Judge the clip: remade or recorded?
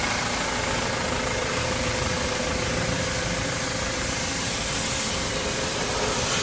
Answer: recorded